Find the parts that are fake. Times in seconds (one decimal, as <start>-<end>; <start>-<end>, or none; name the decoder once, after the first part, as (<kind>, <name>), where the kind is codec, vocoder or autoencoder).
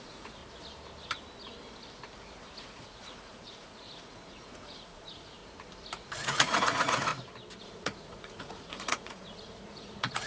0.0-0.4 (vocoder, Vocos); 2.6-5.4; 6.1-7.1; 7.6-10.3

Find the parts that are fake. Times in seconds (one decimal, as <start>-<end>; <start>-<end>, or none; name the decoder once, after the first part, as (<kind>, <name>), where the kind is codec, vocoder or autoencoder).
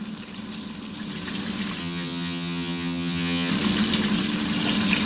1.8-3.5 (vocoder, HiFi-GAN)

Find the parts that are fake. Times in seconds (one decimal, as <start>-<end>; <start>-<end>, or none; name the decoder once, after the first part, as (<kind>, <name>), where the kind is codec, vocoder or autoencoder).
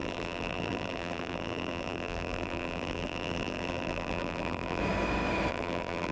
0.0-4.8 (vocoder, BigVGAN v2); 5.5-6.1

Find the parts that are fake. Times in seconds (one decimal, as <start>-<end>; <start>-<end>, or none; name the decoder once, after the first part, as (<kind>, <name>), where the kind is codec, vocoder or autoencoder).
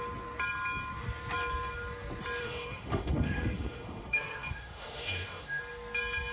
2.4-5.6 (autoencoder, DAC-VAE)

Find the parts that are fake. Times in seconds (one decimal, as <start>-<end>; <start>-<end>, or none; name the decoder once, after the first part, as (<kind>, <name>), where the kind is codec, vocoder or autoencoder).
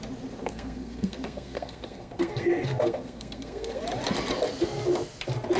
0.4-3.8 (codec, SNAC)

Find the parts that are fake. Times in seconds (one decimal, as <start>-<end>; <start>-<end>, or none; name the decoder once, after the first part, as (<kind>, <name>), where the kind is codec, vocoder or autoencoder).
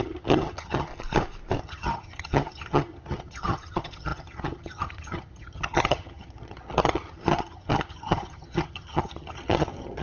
0.0-0.9 (vocoder, HiFi-GAN); 1.6-10.0